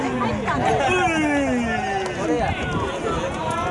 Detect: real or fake real